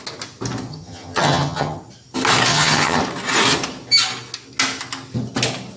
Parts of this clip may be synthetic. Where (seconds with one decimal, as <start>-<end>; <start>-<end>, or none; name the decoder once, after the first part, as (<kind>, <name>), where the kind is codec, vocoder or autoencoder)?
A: 0.7-1.8 (vocoder, HiFi-GAN); 2.5-3.0